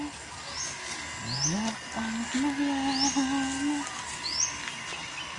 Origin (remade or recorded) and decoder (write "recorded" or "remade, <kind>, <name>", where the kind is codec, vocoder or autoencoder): recorded